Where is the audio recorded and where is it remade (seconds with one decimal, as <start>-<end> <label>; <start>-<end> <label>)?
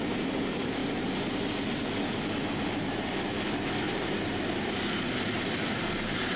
0.0-0.8 remade; 0.8-4.6 recorded; 4.6-6.4 remade